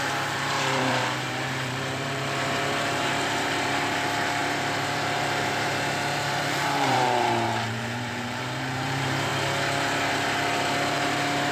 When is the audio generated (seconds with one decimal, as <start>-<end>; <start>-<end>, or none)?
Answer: 0.0-9.3; 10.9-11.5